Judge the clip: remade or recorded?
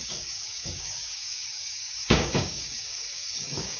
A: remade